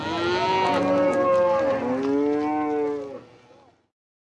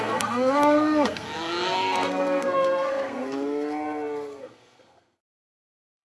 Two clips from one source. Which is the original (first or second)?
first